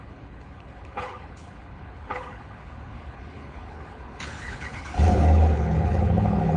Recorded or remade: remade